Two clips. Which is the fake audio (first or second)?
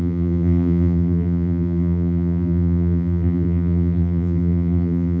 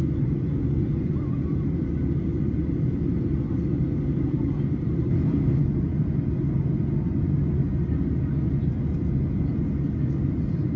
first